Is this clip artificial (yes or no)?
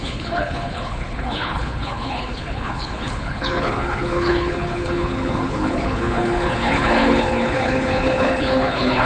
yes